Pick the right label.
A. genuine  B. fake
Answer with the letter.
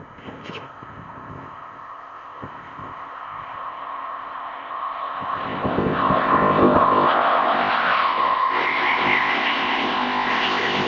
B